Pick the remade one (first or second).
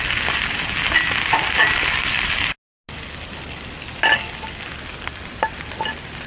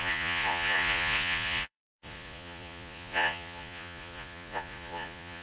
second